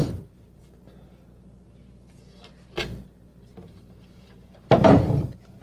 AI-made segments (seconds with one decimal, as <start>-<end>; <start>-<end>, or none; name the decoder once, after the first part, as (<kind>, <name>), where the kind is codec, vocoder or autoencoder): 0.0-0.6 (vocoder, BigVGAN v2); 3.3-5.6